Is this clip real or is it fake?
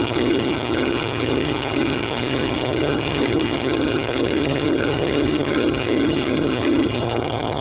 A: fake